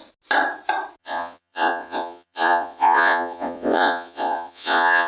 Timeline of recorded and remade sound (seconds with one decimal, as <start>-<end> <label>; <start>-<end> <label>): 0.0-1.0 recorded; 1.0-5.1 remade